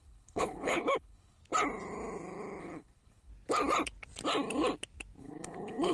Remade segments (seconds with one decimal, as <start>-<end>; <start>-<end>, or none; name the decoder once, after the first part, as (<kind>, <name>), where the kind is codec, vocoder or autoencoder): 0.0-1.4 (codec, HILCodec); 2.6-3.3; 5.2-5.9